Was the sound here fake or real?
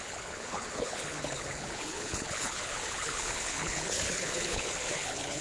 fake